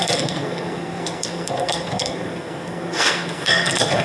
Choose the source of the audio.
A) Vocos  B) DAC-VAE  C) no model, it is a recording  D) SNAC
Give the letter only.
D